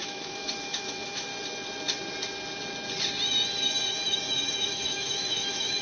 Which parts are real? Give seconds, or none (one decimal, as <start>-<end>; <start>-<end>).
1.3-3.9